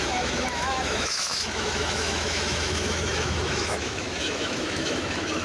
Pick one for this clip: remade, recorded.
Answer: remade